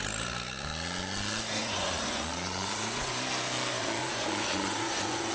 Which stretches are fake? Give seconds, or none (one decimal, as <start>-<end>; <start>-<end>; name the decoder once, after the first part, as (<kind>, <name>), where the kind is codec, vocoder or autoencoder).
1.6-3.2 (vocoder, Vocos); 4.0-5.3